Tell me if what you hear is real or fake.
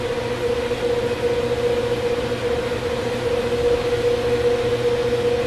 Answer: real